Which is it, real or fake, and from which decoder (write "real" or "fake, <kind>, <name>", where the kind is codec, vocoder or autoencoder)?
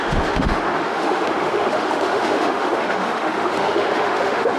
fake, autoencoder, DAC-VAE